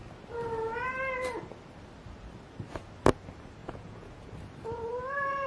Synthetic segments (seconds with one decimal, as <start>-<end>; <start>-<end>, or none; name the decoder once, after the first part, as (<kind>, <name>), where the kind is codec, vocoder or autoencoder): 3.6-4.3 (vocoder, Vocos)